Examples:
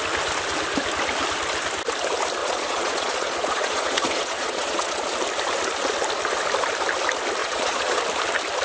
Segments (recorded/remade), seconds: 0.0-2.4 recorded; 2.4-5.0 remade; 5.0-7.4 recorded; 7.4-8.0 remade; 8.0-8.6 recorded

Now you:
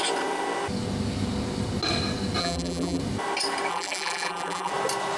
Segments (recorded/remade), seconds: 0.0-2.4 recorded; 2.4-3.0 remade; 3.0-3.7 recorded; 3.7-4.7 remade; 4.7-5.2 recorded

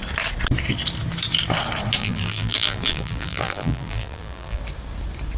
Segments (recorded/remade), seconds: 0.0-2.0 recorded; 2.0-4.6 remade; 4.6-5.4 recorded

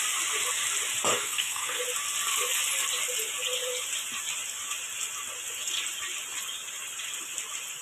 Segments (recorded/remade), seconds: 0.0-1.1 recorded; 1.1-1.8 remade; 1.8-7.8 recorded

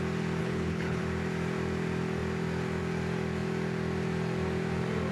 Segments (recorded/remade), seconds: 0.0-0.4 recorded; 0.4-1.0 remade; 1.0-5.1 recorded